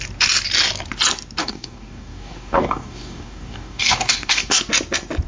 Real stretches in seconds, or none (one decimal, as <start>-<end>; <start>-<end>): 0.0-1.4; 4.6-5.3